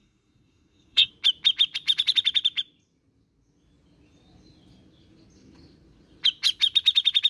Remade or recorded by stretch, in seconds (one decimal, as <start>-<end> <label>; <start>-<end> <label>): 0.0-1.1 remade; 1.1-7.3 recorded